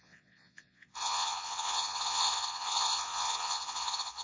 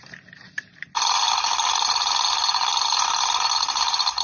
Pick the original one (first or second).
second